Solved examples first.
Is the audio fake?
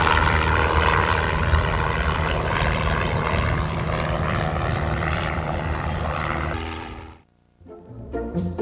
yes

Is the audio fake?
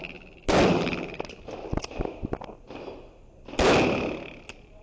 no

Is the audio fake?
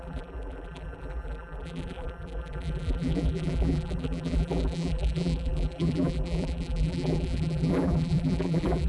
yes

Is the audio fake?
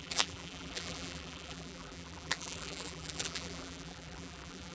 yes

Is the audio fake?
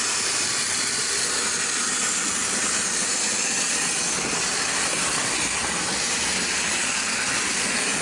no